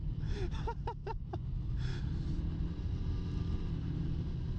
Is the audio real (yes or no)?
yes